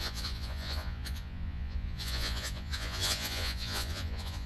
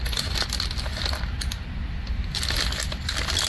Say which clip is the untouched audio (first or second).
second